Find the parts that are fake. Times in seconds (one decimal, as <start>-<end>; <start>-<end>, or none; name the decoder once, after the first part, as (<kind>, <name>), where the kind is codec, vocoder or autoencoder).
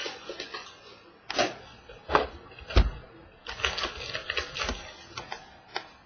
0.0-1.1 (vocoder, Vocos)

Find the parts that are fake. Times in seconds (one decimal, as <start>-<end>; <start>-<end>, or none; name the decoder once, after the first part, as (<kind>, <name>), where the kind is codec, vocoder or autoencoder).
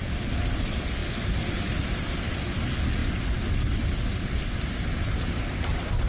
none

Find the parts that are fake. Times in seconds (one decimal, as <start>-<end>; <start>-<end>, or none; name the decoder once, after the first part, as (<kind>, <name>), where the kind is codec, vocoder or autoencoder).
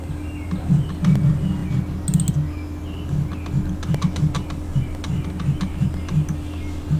none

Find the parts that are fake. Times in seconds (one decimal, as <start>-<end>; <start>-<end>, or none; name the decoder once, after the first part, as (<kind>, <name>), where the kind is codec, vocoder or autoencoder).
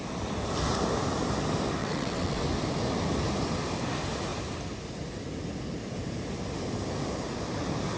1.8-2.4 (vocoder, WaveNeXt)